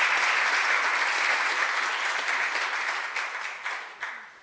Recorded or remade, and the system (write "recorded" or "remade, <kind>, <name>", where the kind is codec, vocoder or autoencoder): recorded